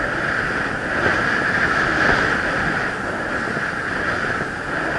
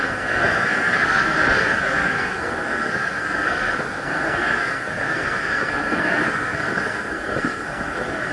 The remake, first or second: second